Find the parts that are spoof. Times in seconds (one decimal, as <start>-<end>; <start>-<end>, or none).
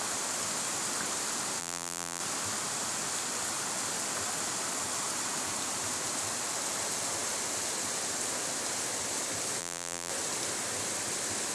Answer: 1.6-2.2; 9.6-10.1